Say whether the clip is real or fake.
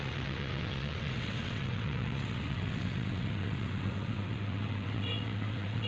fake